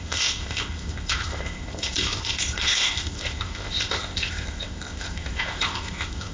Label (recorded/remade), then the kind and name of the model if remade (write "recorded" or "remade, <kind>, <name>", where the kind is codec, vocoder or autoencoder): remade, codec, ZipCodec